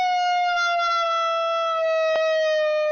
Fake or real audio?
real